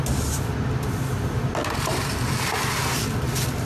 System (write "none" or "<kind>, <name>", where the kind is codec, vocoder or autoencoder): none